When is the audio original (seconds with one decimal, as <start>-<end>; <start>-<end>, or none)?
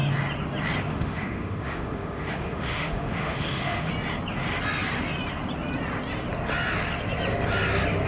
0.0-0.9; 3.9-8.1